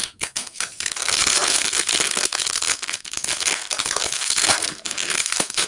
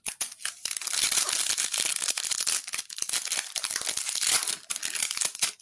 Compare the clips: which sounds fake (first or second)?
first